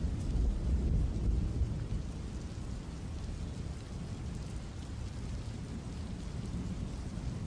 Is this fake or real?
real